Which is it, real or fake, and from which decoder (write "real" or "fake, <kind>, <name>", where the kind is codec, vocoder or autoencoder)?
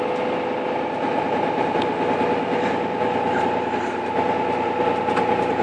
real